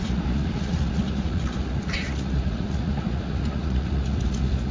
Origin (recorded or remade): remade